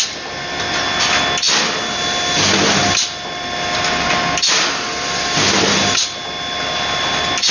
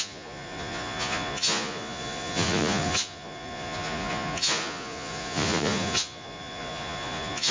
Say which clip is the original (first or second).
first